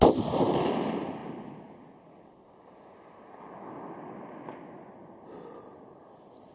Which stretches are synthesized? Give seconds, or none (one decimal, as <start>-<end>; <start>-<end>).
none